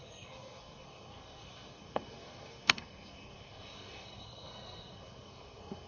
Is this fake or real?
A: fake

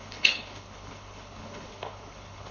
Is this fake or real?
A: fake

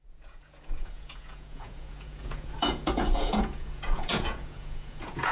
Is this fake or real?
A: fake